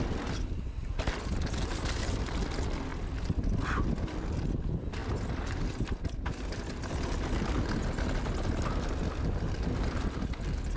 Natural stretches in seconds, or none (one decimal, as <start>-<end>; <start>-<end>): 0.0-10.8